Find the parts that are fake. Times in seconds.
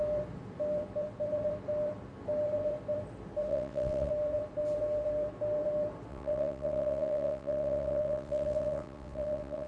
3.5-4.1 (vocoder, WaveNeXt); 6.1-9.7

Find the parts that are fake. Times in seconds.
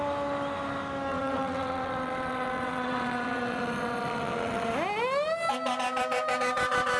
1.1-4.7 (vocoder, WaveNeXt)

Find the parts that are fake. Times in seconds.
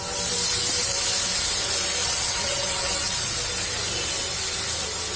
2.0-3.3 (vocoder, WaveNeXt)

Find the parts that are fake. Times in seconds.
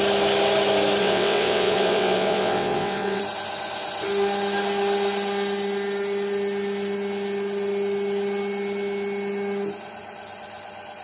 1.0-3.2 (vocoder, WaveNeXt)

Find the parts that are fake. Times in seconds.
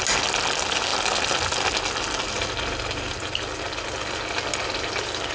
none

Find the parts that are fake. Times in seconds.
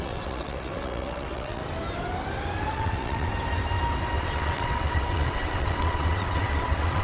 0.0-1.6 (vocoder, WaveNeXt); 2.7-3.3; 4.2-7.0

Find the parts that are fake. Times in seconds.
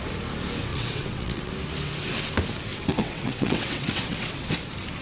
0.7-1.5 (vocoder, WaveNeXt); 2.7-4.5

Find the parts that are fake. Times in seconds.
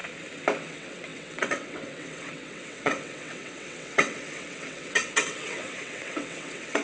0.6-6.8 (vocoder, WaveNeXt)